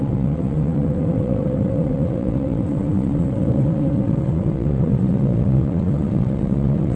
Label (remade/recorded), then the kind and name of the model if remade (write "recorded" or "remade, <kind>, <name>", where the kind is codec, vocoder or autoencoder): remade, vocoder, WaveNeXt